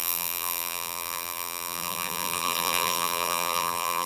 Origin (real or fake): fake